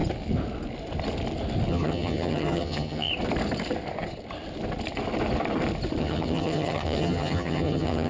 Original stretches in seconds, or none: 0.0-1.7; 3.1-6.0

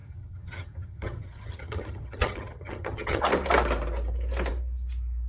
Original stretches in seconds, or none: 3.2-5.3

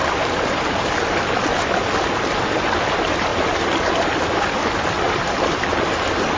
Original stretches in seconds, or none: 0.0-6.4